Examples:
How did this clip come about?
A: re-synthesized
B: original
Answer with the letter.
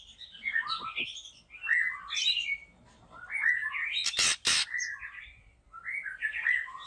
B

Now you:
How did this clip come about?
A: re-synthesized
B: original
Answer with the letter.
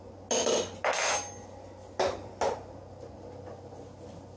B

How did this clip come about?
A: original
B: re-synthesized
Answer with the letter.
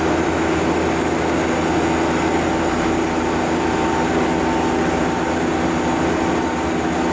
A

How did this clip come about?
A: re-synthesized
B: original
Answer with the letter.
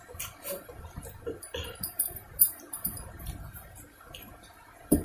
A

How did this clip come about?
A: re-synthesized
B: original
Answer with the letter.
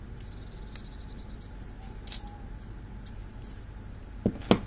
B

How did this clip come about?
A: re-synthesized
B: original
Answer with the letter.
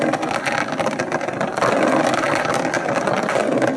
B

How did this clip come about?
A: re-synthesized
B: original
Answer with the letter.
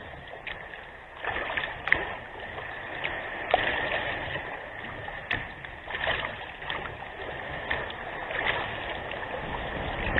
B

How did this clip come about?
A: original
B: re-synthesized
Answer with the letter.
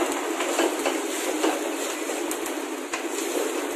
A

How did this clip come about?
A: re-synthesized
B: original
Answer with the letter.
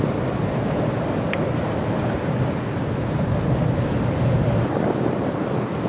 B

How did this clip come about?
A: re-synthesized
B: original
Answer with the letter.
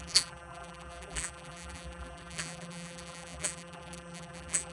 A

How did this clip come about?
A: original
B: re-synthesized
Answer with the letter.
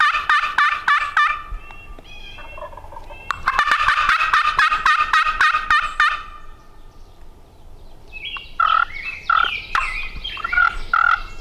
A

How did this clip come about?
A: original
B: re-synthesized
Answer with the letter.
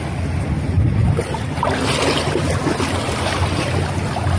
A